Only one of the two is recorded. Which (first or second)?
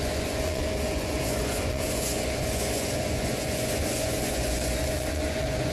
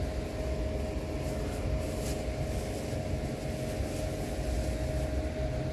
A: second